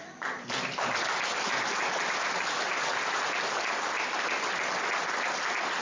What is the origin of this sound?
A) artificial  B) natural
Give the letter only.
B